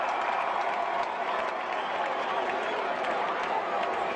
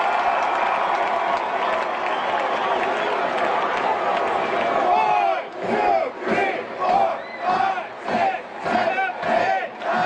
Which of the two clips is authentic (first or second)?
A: second